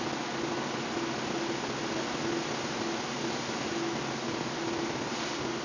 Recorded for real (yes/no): yes